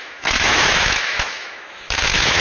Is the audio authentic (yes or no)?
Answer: no